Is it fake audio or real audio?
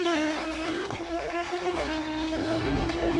fake